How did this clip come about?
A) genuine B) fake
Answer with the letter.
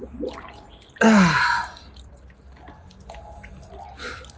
A